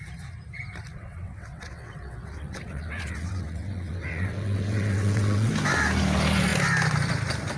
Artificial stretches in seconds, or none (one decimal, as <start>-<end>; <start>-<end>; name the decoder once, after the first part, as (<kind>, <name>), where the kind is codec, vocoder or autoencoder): 0.9-5.5 (vocoder, WaveNeXt)